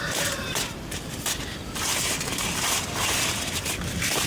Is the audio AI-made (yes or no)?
yes